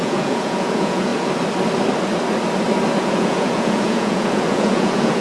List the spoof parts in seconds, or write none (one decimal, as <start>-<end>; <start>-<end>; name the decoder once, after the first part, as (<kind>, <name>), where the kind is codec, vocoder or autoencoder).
0.0-1.1 (vocoder, Vocos); 3.0-5.2